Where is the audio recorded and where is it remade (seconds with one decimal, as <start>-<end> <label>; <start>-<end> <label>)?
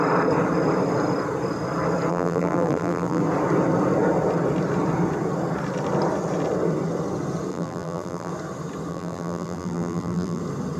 0.0-2.1 recorded; 2.1-3.2 remade; 3.2-7.5 recorded; 7.5-8.3 remade; 8.3-8.9 recorded; 8.9-10.4 remade; 10.4-10.8 recorded